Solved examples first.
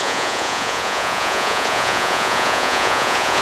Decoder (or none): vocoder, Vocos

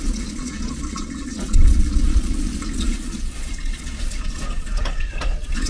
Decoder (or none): vocoder, Vocos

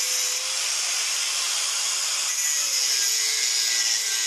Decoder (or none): none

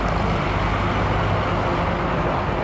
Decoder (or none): none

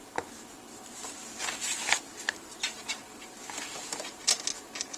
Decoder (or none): none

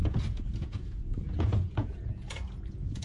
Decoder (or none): vocoder, Vocos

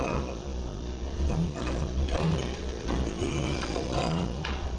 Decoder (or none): vocoder, Vocos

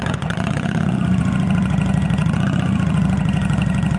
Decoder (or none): vocoder, Vocos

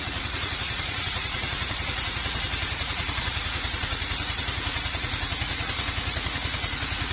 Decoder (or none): vocoder, Vocos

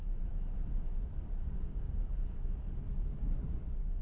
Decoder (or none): none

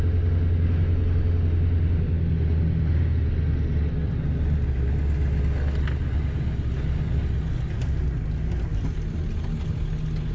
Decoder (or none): none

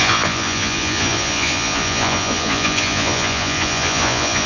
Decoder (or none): vocoder, Vocos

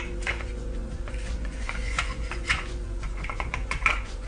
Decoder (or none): vocoder, Vocos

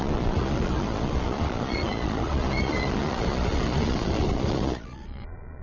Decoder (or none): vocoder, Vocos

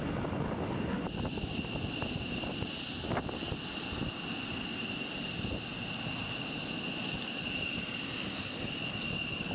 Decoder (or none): none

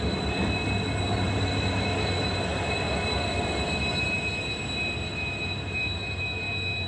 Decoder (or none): none